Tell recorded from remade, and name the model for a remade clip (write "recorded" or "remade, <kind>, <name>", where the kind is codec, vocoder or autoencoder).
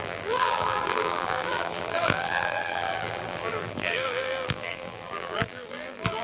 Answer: remade, vocoder, BigVGAN v2